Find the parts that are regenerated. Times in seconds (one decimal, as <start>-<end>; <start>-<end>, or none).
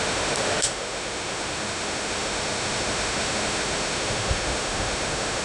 0.0-5.4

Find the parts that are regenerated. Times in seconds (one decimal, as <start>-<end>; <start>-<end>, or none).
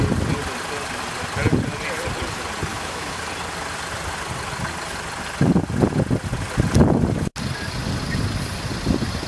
2.7-3.2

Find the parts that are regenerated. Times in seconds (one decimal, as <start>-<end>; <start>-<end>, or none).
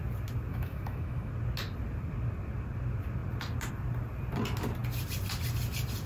0.5-1.3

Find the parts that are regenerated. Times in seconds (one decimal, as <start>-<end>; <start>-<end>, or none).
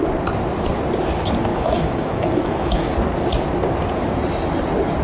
1.5-2.9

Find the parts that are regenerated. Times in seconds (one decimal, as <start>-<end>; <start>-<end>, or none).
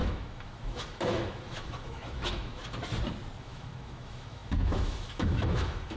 0.0-2.6; 3.4-6.0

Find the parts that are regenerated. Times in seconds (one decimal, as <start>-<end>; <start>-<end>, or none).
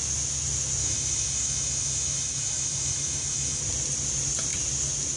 0.8-3.6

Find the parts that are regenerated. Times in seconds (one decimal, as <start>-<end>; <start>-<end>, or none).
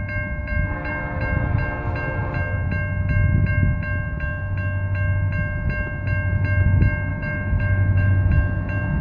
7.1-8.1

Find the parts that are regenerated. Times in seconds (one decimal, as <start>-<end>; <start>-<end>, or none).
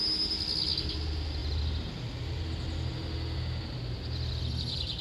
none